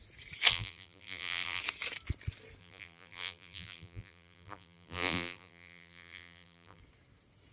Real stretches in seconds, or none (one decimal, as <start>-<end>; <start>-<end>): 0.0-0.5; 1.6-2.6; 6.8-7.5